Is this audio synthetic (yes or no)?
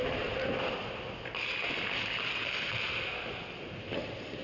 no